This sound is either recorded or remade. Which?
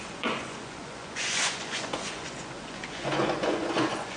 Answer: remade